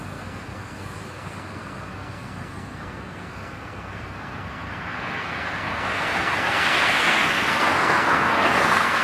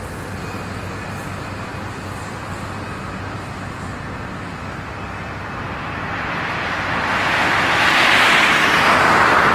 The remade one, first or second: first